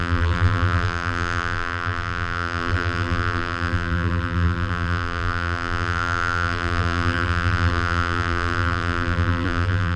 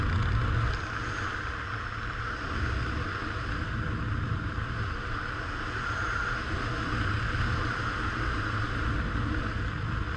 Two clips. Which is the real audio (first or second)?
second